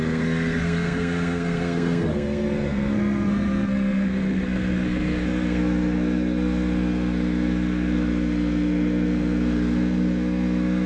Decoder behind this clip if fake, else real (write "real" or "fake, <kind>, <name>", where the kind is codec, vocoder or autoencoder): fake, codec, SNAC